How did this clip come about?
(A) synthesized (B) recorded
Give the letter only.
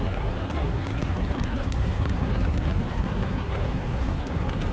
A